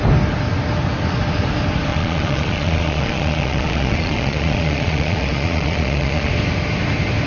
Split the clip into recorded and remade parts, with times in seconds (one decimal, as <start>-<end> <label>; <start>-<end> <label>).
0.0-1.9 recorded; 1.9-6.3 remade; 6.3-7.3 recorded